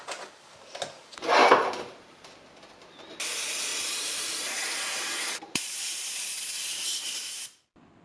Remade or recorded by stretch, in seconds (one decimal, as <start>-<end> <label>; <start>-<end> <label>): 0.0-1.4 recorded; 1.4-2.3 remade; 2.3-3.7 recorded; 3.7-6.5 remade; 6.5-8.0 recorded